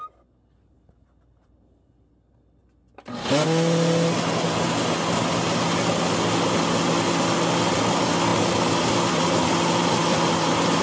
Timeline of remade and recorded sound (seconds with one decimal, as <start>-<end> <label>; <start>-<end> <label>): 0.0-8.3 recorded; 8.3-10.8 remade